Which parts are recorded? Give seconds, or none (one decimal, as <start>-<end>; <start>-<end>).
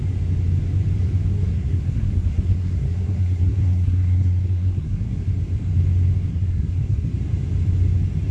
0.0-1.3; 5.3-6.3; 7.1-8.3